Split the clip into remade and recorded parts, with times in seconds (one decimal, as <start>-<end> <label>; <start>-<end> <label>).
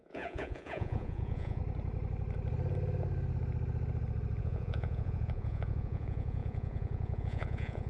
0.0-1.6 remade; 1.6-4.4 recorded; 4.4-7.9 remade